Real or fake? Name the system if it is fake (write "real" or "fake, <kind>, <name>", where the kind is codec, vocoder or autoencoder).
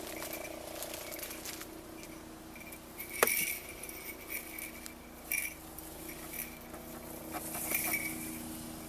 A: real